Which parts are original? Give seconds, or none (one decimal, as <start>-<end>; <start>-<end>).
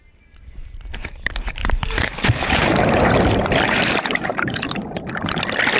0.0-1.6; 5.1-5.8